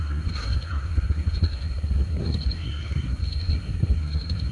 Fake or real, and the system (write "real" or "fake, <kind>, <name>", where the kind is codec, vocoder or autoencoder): fake, codec, SNAC